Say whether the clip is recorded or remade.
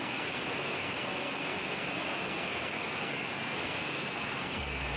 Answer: remade